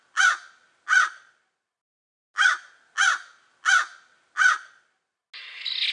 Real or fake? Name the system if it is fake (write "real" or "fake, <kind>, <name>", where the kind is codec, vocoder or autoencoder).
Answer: real